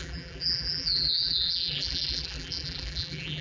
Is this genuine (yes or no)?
no